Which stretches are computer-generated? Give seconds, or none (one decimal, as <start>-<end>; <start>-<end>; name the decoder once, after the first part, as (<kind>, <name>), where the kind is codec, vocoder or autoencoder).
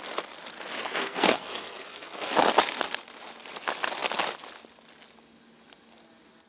0.8-2.3 (codec, SNAC)